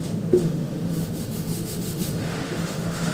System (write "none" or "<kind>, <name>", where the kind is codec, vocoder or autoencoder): autoencoder, DAC-VAE